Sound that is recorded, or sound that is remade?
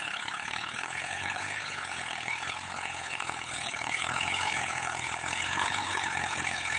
remade